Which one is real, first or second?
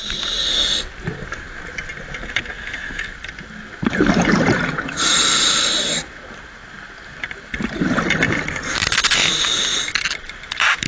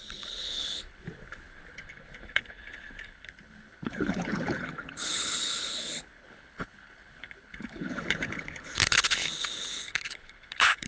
first